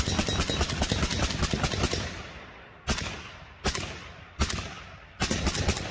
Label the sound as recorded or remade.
recorded